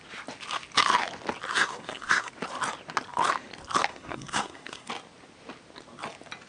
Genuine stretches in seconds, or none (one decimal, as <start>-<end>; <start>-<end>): 0.0-1.5; 2.3-3.9; 4.9-6.5